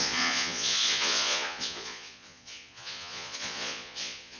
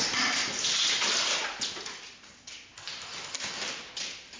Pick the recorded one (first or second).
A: second